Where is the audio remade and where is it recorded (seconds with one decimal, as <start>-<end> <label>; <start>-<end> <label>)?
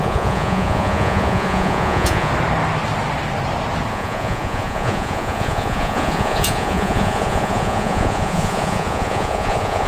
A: 0.0-2.3 remade; 2.3-3.9 recorded; 3.9-9.9 remade